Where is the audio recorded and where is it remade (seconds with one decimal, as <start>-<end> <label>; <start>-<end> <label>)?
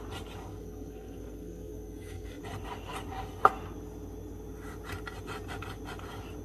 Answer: 0.0-0.5 recorded; 0.5-2.4 remade; 2.4-6.4 recorded